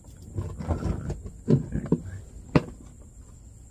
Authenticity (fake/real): real